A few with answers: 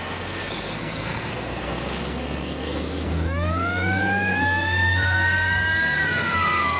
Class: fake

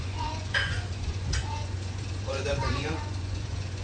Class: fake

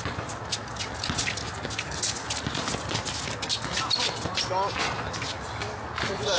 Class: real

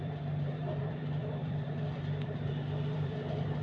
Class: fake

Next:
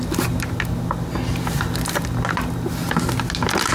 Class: real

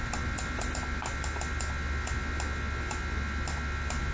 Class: real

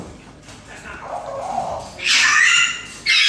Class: real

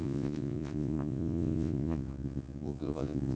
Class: fake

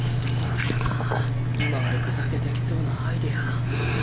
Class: real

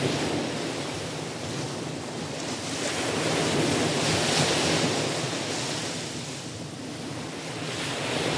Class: real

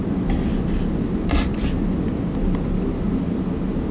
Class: real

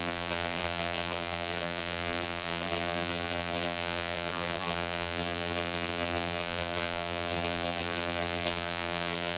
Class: fake